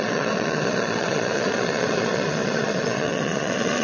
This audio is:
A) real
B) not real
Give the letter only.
B